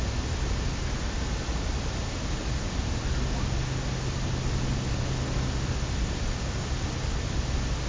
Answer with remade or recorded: recorded